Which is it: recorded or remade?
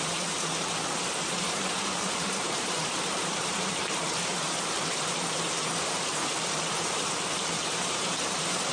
remade